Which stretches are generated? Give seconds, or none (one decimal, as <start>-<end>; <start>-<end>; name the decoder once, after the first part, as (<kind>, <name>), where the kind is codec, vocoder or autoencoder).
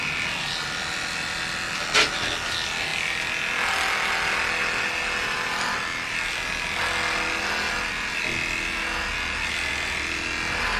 none